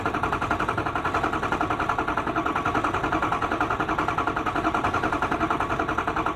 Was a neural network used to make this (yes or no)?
no